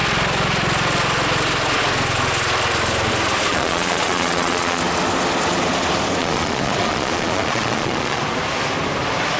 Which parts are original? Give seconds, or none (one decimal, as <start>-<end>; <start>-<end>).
0.0-3.5; 4.8-6.2; 8.2-9.4